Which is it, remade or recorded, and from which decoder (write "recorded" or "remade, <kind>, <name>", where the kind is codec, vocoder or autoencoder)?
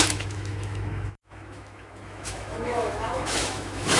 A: remade, autoencoder, DAC-VAE